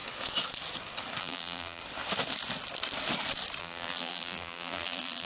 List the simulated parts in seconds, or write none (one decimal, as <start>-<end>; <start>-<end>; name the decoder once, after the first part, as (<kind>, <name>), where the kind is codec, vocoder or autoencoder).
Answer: 1.2-1.8 (vocoder, BigVGAN v2); 3.6-5.3